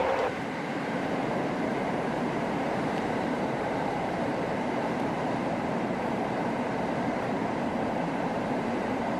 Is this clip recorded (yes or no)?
no